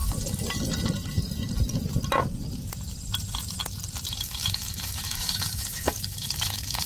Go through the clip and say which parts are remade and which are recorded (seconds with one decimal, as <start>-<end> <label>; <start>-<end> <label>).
0.0-4.1 recorded; 4.1-6.9 remade